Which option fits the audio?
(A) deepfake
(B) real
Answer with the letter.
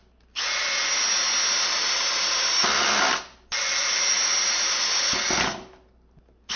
B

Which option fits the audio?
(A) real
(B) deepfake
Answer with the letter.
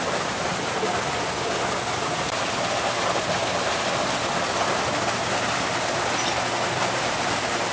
A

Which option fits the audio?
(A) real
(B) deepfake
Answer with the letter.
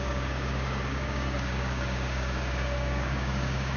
B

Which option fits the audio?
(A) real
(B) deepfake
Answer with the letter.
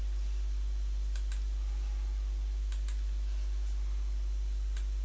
A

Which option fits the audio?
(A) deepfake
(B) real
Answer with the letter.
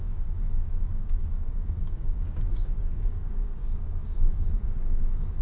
A